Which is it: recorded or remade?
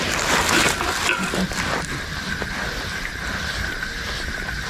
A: recorded